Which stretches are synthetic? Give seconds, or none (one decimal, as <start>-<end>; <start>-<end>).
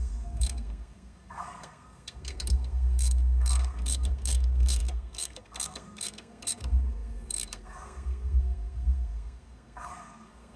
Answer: 0.0-10.6